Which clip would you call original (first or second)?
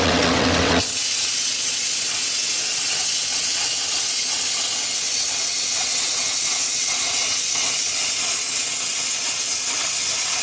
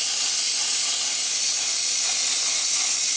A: second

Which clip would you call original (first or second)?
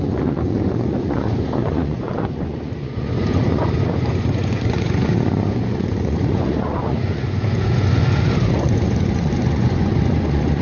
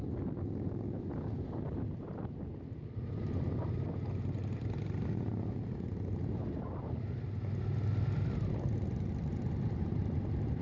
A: second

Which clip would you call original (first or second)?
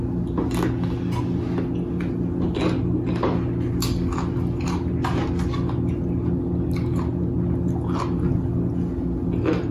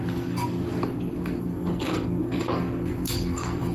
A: first